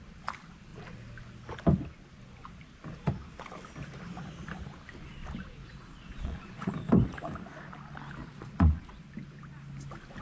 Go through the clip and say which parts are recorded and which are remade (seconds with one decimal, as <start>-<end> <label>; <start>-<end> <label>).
0.0-5.6 recorded; 5.6-6.7 remade; 6.7-8.2 recorded; 8.2-9.0 remade; 9.0-10.2 recorded